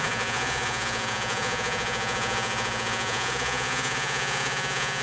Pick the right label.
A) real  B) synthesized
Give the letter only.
B